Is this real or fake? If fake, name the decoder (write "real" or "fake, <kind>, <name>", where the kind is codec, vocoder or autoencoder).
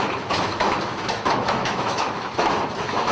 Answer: fake, autoencoder, DAC-VAE